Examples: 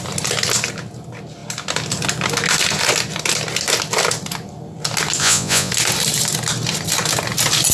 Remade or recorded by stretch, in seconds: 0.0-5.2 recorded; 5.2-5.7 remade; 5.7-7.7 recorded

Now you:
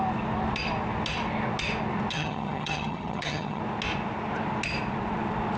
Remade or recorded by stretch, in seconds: 0.0-2.1 recorded; 2.1-3.6 remade; 3.6-5.6 recorded